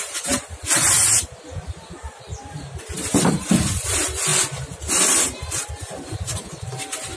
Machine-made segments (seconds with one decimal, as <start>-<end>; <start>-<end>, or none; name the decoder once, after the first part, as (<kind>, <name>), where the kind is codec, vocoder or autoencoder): 0.0-4.3 (vocoder, BigVGAN v2); 4.9-7.2

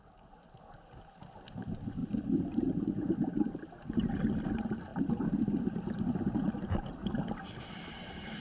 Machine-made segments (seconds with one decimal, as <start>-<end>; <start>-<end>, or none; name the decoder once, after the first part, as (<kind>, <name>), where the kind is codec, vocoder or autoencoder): none

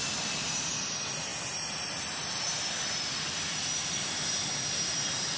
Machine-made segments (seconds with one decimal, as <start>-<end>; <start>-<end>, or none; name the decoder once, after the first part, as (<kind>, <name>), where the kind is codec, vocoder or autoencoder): none